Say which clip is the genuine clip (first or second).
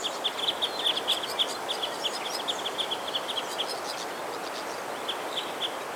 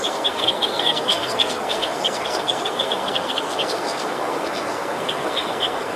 first